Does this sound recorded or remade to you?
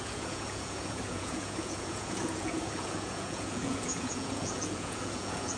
remade